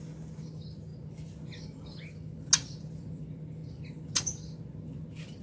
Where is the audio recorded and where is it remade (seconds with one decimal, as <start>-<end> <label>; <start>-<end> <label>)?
0.0-5.4 recorded